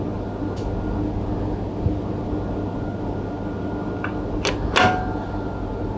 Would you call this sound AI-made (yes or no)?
no